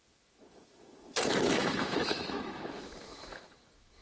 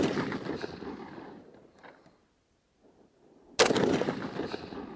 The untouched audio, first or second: second